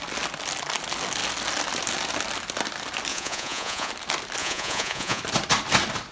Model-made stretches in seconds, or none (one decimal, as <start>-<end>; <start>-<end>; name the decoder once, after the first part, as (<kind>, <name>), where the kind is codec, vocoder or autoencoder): 3.1-3.9 (vocoder, Vocos); 4.4-5.2